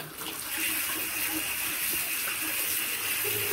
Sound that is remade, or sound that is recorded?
recorded